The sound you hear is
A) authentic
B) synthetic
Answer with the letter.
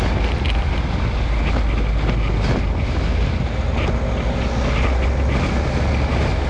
A